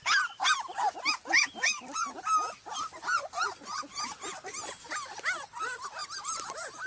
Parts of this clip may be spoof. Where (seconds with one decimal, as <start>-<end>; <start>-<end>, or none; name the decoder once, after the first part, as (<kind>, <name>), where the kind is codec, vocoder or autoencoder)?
none